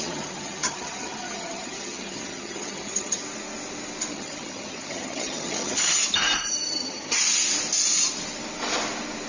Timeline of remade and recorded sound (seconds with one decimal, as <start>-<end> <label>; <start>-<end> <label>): 0.0-3.2 remade; 3.2-4.1 recorded; 4.1-6.0 remade; 6.0-6.7 recorded; 6.7-7.2 remade; 7.2-9.3 recorded